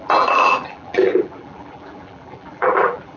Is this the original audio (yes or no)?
no